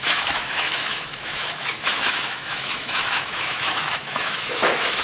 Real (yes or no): no